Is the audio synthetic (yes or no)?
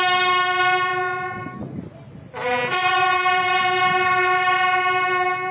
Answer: no